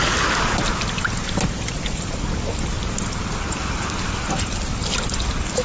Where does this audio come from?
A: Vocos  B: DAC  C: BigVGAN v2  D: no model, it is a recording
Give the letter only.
D